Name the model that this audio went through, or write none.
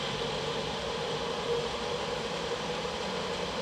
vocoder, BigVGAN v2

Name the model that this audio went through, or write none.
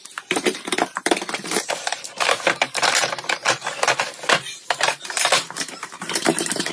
vocoder, BigVGAN v2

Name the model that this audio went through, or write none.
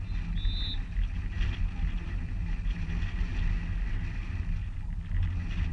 none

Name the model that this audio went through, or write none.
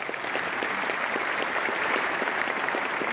vocoder, BigVGAN v2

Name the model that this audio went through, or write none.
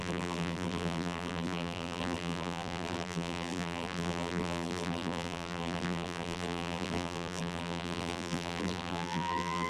vocoder, BigVGAN v2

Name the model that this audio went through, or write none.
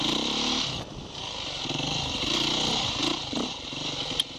none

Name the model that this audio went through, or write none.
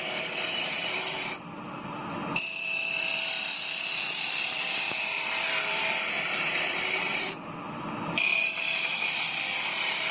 vocoder, BigVGAN v2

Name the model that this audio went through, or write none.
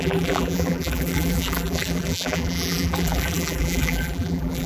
vocoder, BigVGAN v2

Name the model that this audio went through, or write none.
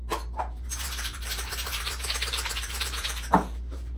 vocoder, BigVGAN v2